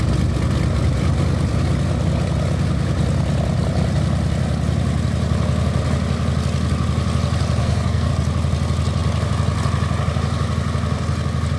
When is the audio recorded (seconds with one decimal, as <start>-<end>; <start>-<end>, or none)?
0.0-7.6; 8.1-11.6